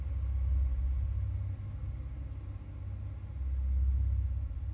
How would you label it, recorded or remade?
recorded